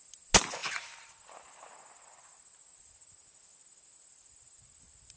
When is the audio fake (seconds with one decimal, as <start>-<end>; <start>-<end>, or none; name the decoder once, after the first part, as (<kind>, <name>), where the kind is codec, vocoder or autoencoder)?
none